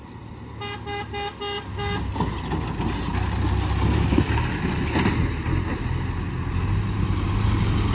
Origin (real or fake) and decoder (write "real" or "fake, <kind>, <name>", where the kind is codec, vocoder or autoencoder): real